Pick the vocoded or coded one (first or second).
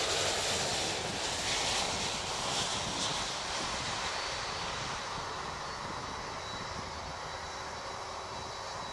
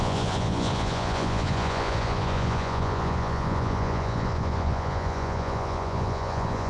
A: second